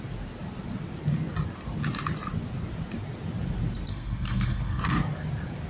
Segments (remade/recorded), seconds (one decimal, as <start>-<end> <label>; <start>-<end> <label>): 0.0-3.9 recorded; 3.9-4.8 remade; 4.8-5.7 recorded

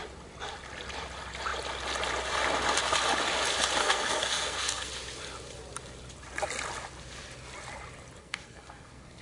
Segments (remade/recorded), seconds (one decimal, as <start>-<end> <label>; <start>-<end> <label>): 0.0-3.8 recorded; 3.8-4.9 remade; 4.9-8.2 recorded; 8.2-9.2 remade

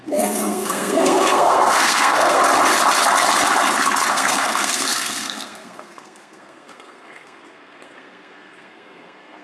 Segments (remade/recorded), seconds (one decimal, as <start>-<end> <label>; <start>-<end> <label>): 0.0-2.4 remade; 2.4-4.1 recorded; 4.1-9.4 remade

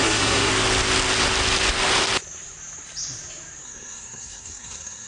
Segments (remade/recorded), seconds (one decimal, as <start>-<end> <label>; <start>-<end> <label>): 0.0-0.5 remade; 0.5-3.6 recorded; 3.6-5.1 remade